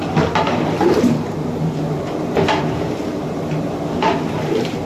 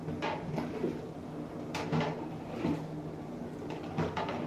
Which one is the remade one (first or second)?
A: first